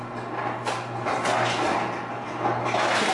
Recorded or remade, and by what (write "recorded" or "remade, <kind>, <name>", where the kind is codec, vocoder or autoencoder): recorded